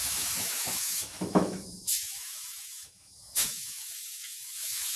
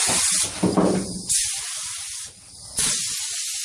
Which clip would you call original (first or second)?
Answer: second